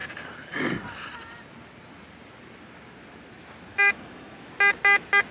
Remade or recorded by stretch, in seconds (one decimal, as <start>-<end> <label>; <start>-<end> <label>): 0.0-3.7 recorded; 3.7-4.5 remade; 4.5-5.3 recorded

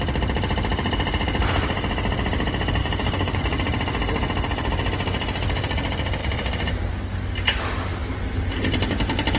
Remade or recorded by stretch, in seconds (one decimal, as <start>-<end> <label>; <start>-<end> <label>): 0.0-2.8 recorded; 2.8-3.4 remade; 3.4-9.4 recorded

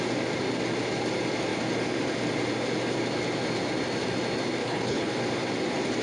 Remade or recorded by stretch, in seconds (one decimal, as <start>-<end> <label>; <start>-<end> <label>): 0.0-4.6 recorded; 4.6-5.1 remade; 5.1-6.0 recorded

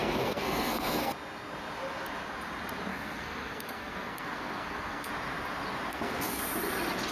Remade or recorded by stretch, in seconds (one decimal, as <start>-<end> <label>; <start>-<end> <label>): 0.0-1.1 remade; 1.1-2.9 recorded; 2.9-5.1 remade; 5.1-5.9 recorded; 5.9-6.4 remade; 6.4-7.1 recorded

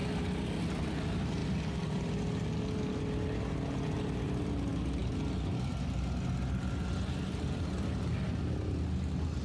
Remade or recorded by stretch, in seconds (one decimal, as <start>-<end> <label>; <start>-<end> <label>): 0.0-9.4 recorded